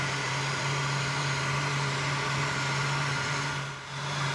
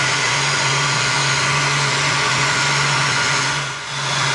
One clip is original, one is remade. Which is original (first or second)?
first